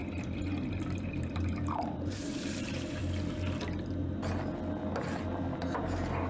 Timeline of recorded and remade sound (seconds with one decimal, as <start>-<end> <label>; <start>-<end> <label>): 0.0-3.0 remade; 3.0-6.3 recorded